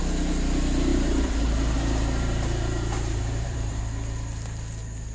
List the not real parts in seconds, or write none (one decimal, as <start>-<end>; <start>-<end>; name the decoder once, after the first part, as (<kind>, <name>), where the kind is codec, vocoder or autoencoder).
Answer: 0.9-3.8 (vocoder, BigVGAN v2)